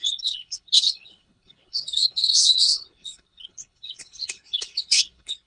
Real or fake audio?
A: fake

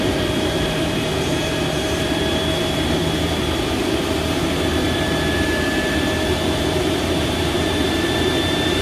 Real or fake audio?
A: fake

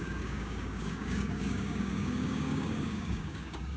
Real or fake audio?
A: fake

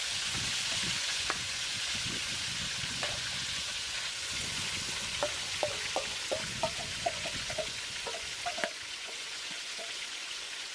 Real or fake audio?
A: fake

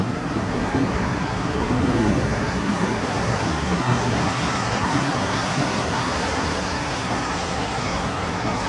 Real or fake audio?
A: fake